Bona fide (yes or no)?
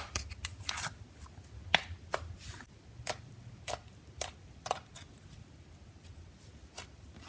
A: yes